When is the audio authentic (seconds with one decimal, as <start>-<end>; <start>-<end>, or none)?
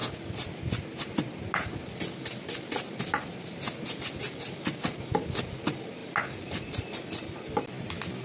0.0-8.2